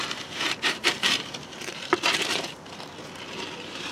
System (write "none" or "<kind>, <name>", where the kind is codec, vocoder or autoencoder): vocoder, BigVGAN v2